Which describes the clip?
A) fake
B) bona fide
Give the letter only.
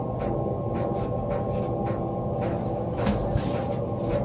B